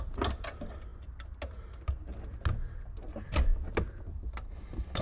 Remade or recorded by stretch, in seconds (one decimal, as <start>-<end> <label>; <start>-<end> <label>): 0.0-5.0 recorded